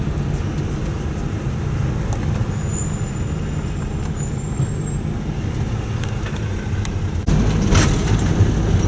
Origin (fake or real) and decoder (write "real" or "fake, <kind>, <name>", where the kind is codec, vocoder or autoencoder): real